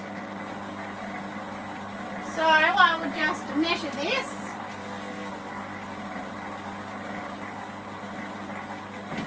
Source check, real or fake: real